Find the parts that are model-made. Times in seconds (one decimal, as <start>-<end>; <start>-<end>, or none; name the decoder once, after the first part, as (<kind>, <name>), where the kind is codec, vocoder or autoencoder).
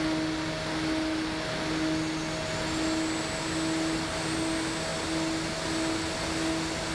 none